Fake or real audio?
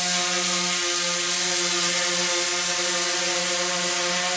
real